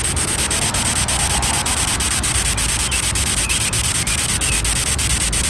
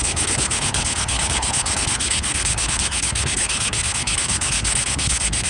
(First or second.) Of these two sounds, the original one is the first